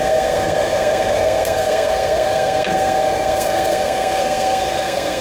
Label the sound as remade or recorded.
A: remade